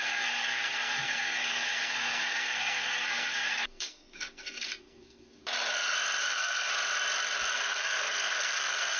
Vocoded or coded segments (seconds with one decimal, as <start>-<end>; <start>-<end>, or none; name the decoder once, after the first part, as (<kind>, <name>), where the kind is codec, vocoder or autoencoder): 0.0-5.4 (codec, SNAC); 6.2-6.7; 7.5-9.0